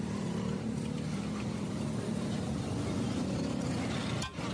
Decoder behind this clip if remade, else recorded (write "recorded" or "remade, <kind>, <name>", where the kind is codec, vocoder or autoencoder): recorded